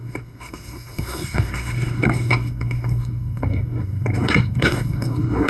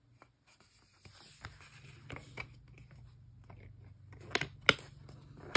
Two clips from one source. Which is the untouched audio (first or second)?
second